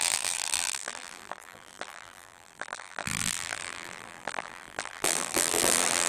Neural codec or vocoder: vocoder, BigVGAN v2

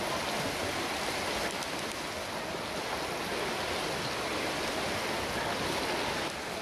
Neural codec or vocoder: none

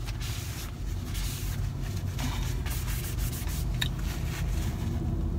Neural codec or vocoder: none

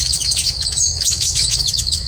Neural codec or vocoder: autoencoder, DAC-VAE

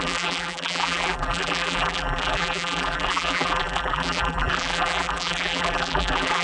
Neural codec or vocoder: vocoder, BigVGAN v2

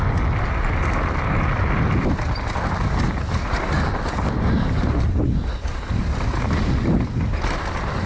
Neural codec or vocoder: none